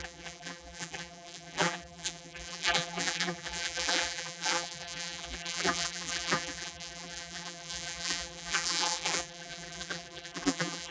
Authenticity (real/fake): fake